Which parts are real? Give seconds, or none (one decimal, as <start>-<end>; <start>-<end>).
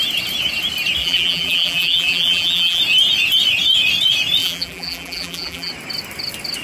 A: 0.0-1.0; 2.8-4.4; 5.7-6.6